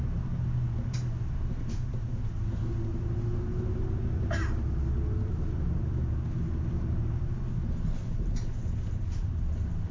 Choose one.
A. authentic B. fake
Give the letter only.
A